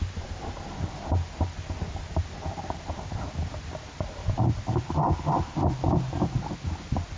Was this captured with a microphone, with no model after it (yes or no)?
yes